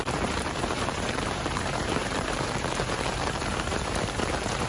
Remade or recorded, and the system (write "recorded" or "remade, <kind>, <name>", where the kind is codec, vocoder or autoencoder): remade, vocoder, BigVGAN v2